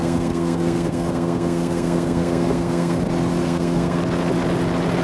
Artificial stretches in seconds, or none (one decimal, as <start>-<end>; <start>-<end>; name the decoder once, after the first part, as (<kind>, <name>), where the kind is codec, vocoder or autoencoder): 0.0-3.0 (codec, SNAC); 3.4-4.0